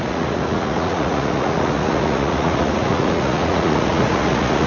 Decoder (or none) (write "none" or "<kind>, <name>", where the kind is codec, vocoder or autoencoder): vocoder, Vocos